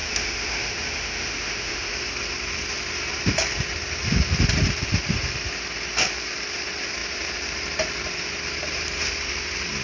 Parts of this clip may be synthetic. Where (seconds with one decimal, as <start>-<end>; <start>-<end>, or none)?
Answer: 0.0-1.9